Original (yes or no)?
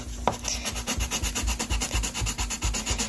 yes